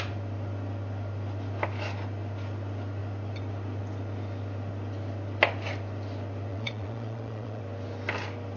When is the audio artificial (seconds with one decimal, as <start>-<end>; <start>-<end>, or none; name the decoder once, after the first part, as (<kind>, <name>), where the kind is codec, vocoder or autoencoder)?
6.5-7.6 (vocoder, Vocos)